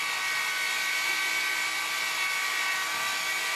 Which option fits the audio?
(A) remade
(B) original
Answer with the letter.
B